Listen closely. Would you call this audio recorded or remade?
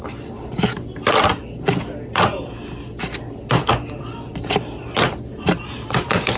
recorded